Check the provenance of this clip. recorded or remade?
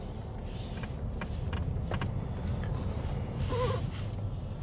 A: recorded